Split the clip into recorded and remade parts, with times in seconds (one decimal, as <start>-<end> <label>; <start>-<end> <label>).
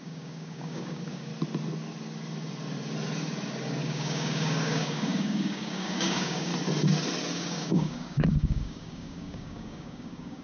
0.0-1.3 remade; 1.3-3.8 recorded; 3.8-6.5 remade; 6.5-7.3 recorded; 7.3-10.4 remade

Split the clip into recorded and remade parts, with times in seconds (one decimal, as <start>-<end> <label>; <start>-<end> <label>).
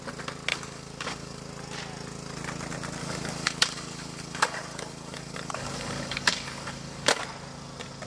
0.0-0.5 recorded; 0.5-1.4 remade; 1.4-3.0 recorded; 3.0-7.2 remade; 7.2-8.1 recorded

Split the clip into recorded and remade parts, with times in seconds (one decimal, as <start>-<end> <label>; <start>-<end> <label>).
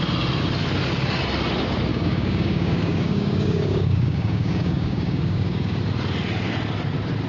0.0-1.9 recorded; 1.9-5.8 remade; 5.8-7.3 recorded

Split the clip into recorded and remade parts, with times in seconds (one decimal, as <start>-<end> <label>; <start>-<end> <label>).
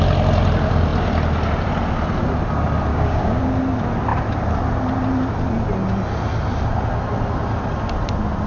0.0-2.9 recorded; 2.9-3.4 remade; 3.4-8.5 recorded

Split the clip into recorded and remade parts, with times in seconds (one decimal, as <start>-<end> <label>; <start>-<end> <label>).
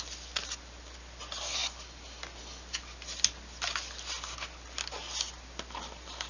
0.0-6.3 recorded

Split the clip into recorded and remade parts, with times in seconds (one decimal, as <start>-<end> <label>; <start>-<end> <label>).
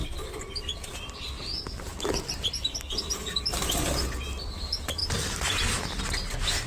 0.0-6.7 recorded